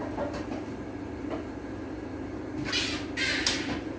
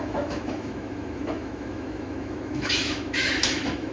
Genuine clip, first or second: first